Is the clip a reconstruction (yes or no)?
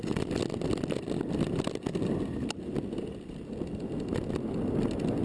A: no